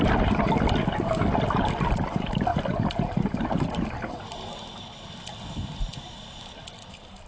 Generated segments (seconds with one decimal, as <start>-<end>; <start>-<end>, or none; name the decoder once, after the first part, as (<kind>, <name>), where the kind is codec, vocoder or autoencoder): 2.5-4.2 (vocoder, BigVGAN v2)